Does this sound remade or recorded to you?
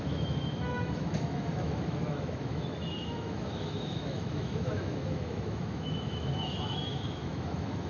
remade